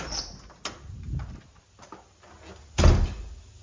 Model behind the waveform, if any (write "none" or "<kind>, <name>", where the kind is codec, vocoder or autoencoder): none